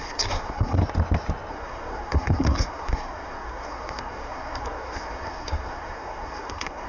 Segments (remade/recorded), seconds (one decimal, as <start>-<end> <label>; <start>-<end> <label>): 0.0-0.8 remade; 0.8-1.5 recorded; 1.5-6.9 remade